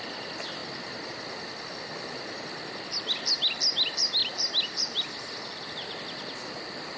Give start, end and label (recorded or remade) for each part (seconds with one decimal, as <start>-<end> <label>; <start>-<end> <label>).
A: 0.0-7.0 recorded